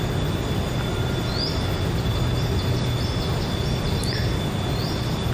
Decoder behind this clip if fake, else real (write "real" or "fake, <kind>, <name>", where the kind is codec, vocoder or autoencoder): real